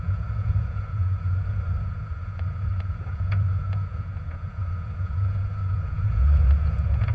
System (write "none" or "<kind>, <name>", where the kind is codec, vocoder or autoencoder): vocoder, Vocos